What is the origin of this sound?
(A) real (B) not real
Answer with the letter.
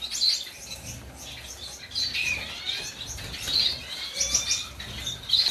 A